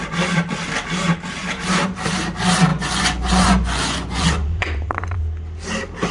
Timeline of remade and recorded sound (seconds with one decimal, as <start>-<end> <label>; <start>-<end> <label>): 0.0-2.7 recorded; 2.7-5.2 remade; 5.2-6.1 recorded